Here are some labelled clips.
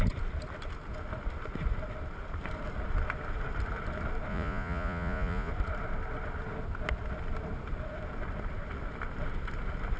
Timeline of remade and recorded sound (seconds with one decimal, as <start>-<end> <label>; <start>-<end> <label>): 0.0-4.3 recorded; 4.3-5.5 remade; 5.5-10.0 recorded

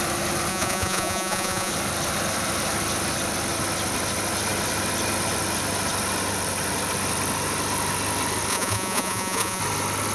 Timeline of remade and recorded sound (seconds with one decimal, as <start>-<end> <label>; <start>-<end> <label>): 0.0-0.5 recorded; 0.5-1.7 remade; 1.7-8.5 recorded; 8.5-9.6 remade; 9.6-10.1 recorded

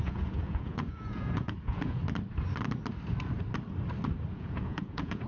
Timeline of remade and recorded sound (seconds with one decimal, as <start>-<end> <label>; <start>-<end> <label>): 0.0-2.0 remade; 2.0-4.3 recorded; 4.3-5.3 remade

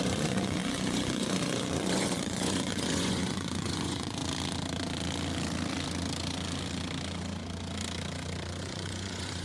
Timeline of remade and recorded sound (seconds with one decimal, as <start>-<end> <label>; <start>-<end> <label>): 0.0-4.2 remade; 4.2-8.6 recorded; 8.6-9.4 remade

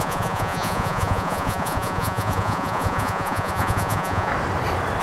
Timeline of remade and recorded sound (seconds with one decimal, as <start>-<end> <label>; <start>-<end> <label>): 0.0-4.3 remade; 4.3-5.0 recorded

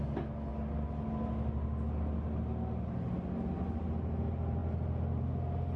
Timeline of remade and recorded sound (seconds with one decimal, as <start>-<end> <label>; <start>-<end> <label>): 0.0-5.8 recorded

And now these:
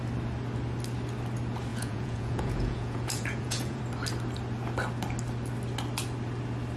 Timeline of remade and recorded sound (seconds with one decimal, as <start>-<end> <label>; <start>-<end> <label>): 0.0-1.7 recorded; 1.7-3.8 remade; 3.8-6.8 recorded